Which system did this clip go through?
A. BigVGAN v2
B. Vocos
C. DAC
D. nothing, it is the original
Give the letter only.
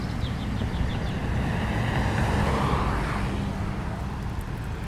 D